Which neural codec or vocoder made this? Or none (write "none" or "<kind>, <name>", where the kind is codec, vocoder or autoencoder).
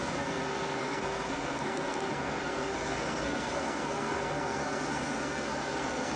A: codec, SNAC